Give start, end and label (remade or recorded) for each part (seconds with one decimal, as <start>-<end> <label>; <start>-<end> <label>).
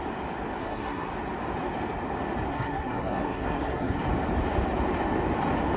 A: 0.0-0.6 recorded; 0.6-1.1 remade; 1.1-2.5 recorded; 2.5-4.0 remade; 4.0-5.8 recorded